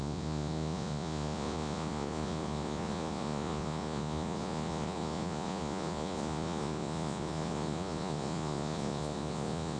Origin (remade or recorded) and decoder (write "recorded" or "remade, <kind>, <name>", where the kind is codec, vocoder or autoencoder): remade, vocoder, Vocos